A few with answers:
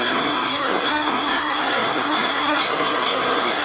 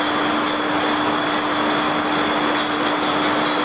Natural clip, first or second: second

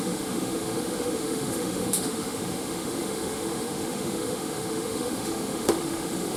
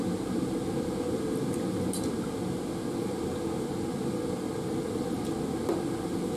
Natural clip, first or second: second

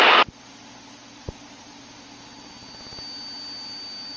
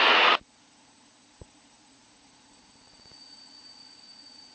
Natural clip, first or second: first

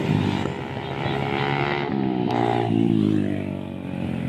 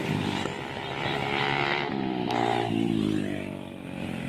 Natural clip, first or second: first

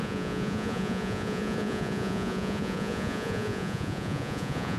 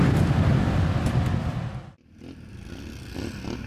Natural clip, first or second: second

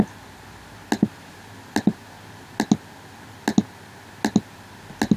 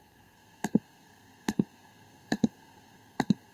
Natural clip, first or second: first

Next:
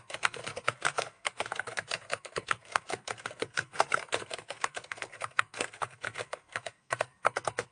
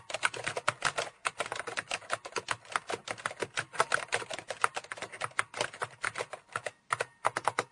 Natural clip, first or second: second